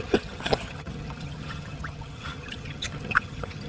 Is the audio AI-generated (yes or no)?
yes